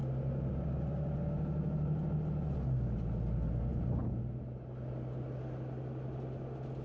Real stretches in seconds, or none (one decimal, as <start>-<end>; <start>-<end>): 0.0-3.7; 4.2-6.8